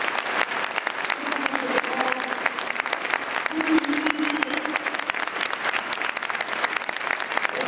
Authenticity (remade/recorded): recorded